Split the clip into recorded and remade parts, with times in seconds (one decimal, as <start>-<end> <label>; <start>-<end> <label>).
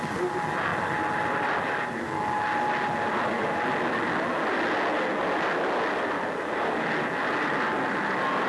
0.0-8.5 recorded